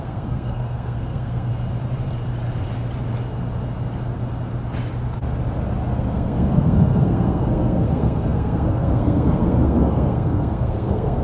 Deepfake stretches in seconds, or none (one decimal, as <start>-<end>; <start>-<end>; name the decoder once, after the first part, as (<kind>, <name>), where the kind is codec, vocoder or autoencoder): 0.0-1.5 (codec, SNAC); 5.9-11.2